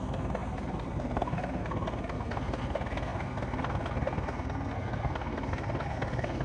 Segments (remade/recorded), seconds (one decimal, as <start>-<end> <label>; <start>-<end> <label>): 0.0-6.4 remade